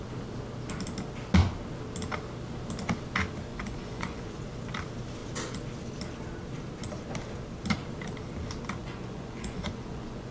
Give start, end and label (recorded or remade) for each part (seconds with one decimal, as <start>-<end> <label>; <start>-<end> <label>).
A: 0.0-3.5 recorded; 3.5-4.4 remade; 4.4-8.8 recorded; 8.8-10.3 remade